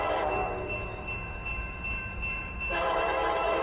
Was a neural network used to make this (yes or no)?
yes